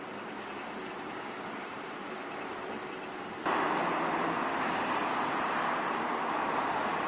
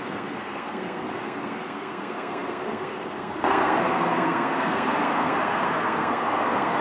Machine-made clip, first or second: second